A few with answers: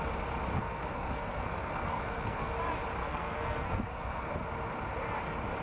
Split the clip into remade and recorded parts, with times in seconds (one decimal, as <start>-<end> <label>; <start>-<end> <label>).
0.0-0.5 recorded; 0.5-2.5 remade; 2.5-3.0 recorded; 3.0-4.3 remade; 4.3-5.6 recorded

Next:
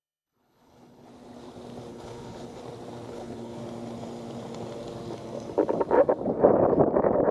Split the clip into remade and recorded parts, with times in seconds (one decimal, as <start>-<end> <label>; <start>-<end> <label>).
0.0-1.1 remade; 1.1-1.9 recorded; 1.9-2.6 remade; 2.6-3.1 recorded; 3.1-3.6 remade; 3.6-7.3 recorded

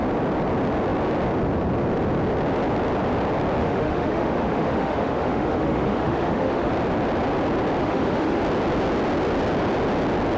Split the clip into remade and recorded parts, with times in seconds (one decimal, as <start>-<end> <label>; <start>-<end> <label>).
0.0-3.6 recorded; 3.6-6.7 remade; 6.7-7.8 recorded; 7.8-8.4 remade; 8.4-10.4 recorded

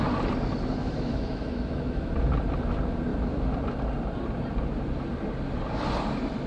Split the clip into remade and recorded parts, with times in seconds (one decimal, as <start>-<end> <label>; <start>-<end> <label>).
0.0-0.8 recorded; 0.8-2.1 remade; 2.1-6.5 recorded

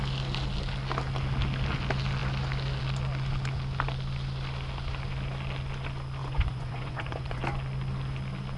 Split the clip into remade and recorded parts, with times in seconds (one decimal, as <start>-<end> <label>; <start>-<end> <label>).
0.0-6.2 recorded; 6.2-7.4 remade; 7.4-8.6 recorded